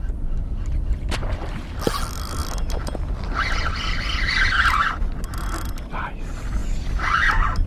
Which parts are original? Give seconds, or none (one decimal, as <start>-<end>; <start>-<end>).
0.0-7.7